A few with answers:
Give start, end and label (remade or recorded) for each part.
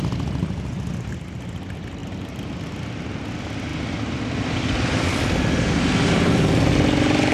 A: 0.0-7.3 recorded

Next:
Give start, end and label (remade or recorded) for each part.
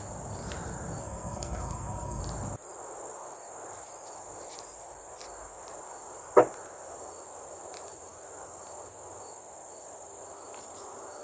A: 0.0-1.0 recorded; 1.0-2.2 remade; 2.2-11.2 recorded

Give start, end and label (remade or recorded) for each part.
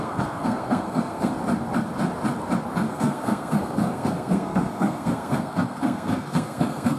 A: 0.0-1.3 remade; 1.3-2.9 recorded; 2.9-7.0 remade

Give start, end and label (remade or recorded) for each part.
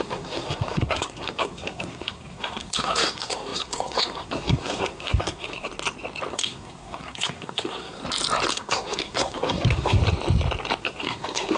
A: 0.0-5.7 remade; 5.7-6.3 recorded; 6.3-8.0 remade; 8.0-8.5 recorded; 8.5-10.0 remade; 10.0-10.8 recorded; 10.8-11.6 remade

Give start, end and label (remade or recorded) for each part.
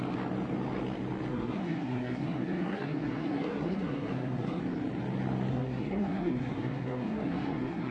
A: 0.0-1.3 recorded; 1.3-4.6 remade; 4.6-5.5 recorded; 5.5-7.9 remade